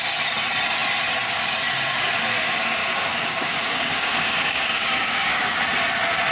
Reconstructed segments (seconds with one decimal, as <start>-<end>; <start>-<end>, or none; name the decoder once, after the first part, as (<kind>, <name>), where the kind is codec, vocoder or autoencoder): 2.8-5.6 (codec, DAC)